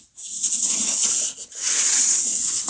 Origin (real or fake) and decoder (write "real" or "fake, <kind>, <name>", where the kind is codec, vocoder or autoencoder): fake, vocoder, Vocos